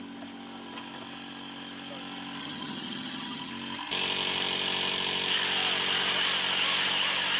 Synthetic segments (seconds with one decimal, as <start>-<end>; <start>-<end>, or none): 2.4-3.5